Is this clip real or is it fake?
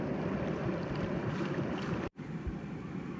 real